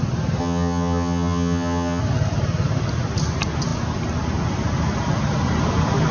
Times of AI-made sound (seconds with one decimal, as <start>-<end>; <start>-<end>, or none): 0.4-2.0